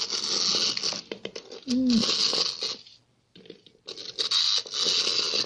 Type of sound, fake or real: real